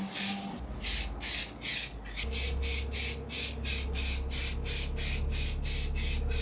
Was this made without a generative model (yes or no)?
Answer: yes